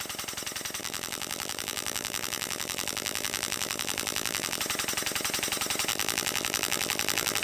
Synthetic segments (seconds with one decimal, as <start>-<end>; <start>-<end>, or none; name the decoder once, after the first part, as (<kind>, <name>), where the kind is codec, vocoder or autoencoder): 0.8-4.6 (vocoder, BigVGAN v2); 5.9-7.4